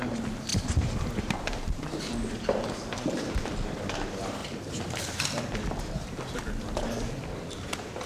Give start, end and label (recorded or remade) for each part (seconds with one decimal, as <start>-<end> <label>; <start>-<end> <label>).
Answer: 0.0-0.5 recorded; 0.5-3.4 remade; 3.4-4.4 recorded; 4.4-6.4 remade; 6.4-8.1 recorded